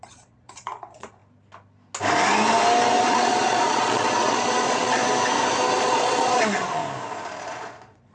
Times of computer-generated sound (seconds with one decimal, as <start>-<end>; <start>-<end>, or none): 0.0-1.2; 3.0-5.0; 5.8-6.8; 7.4-8.1